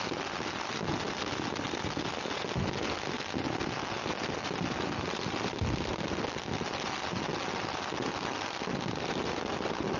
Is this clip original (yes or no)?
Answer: yes